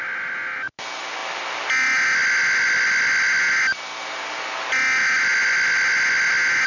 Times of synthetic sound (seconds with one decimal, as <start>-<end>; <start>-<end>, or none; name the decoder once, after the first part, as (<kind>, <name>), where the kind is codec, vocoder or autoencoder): none